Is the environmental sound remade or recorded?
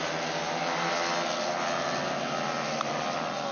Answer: recorded